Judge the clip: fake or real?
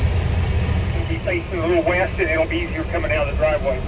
real